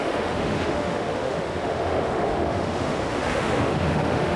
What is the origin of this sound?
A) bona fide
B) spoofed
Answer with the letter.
B